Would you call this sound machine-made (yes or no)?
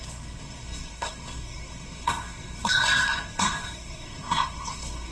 yes